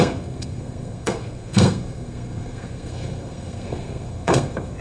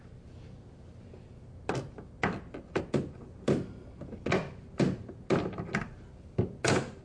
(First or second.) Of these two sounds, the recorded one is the second